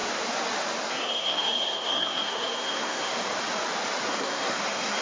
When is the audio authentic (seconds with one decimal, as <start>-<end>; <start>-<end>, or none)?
0.0-0.9; 3.1-4.1